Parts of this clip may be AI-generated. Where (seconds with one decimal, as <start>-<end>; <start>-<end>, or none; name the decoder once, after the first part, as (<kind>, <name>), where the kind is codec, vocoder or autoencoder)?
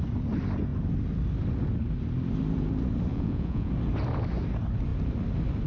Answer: 3.1-3.7 (vocoder, Vocos)